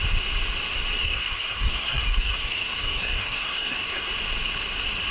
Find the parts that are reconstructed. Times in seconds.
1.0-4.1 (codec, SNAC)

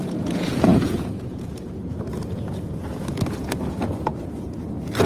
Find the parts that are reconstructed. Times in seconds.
0.0-5.1 (vocoder, Vocos)

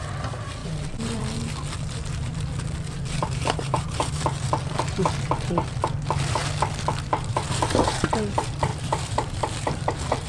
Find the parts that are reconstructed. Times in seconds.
0.0-6.4 (vocoder, BigVGAN v2); 7.1-10.3

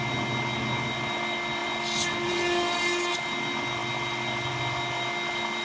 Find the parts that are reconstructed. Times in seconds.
none

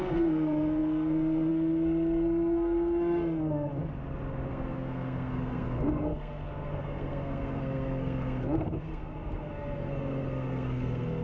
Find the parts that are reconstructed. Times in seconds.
0.0-3.7 (codec, SNAC); 4.5-11.2